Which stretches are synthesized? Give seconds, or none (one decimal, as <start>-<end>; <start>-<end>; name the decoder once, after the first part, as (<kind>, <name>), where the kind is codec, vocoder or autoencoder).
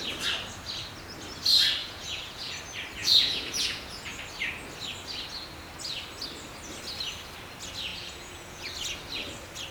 1.8-2.5 (vocoder, Vocos); 3.0-4.2; 7.9-8.6